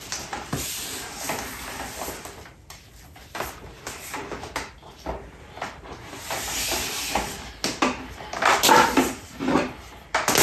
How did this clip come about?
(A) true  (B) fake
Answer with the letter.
A